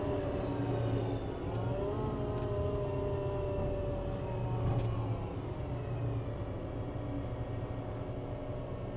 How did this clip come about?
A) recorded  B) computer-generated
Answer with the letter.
A